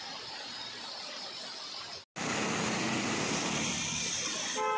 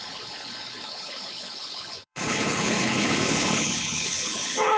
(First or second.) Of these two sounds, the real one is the first